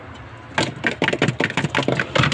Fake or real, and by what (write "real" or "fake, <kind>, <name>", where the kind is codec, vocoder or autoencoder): real